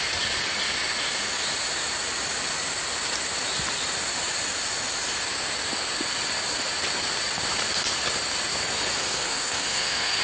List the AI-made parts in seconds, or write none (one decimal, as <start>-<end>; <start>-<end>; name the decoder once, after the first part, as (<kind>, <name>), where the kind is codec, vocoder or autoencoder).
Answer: 9.0-10.2 (codec, SNAC)